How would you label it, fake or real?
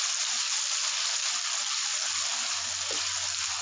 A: real